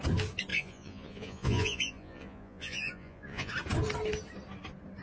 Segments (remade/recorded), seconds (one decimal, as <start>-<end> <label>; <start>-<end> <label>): 0.0-0.5 recorded; 0.5-3.5 remade; 3.5-5.0 recorded